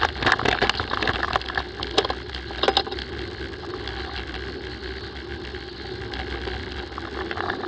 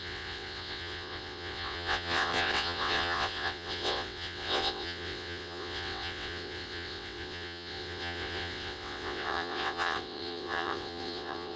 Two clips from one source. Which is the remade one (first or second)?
second